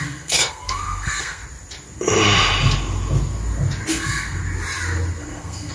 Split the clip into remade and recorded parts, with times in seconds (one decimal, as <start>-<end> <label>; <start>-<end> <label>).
0.0-1.4 remade; 1.4-3.9 recorded; 3.9-4.4 remade; 4.4-5.2 recorded; 5.2-5.7 remade